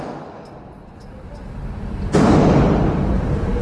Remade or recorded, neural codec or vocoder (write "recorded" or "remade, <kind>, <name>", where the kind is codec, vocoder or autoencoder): recorded